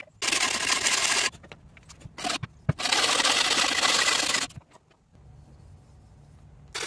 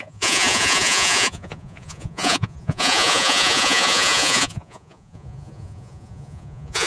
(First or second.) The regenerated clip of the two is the second